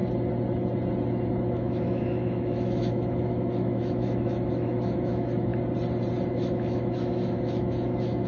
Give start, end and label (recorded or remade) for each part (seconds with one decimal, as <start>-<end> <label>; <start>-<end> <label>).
0.0-1.3 recorded; 1.3-5.5 remade; 5.5-6.3 recorded; 6.3-8.3 remade